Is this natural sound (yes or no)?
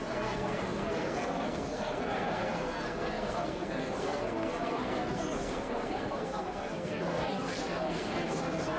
no